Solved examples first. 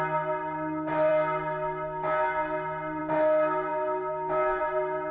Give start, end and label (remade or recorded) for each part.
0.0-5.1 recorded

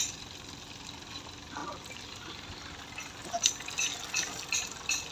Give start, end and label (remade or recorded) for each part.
0.0-5.1 recorded

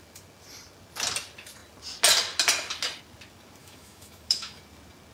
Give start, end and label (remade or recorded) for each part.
0.0-3.6 recorded; 3.6-4.6 remade; 4.6-5.1 recorded